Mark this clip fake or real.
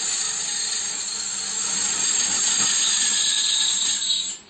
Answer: real